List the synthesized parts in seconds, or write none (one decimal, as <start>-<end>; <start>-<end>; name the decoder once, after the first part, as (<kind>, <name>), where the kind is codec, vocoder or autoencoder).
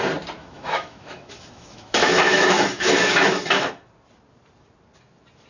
0.4-3.7 (autoencoder, DAC-VAE)